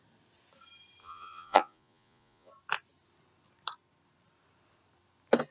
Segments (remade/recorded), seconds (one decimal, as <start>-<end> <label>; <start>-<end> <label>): 0.0-1.0 recorded; 1.0-2.5 remade; 2.5-5.5 recorded